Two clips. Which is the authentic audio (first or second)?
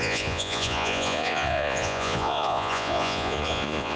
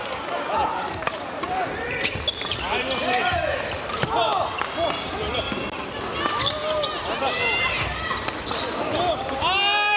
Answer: second